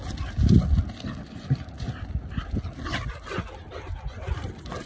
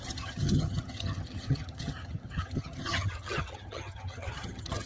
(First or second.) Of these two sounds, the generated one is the second